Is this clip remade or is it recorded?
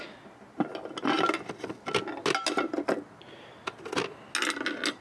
recorded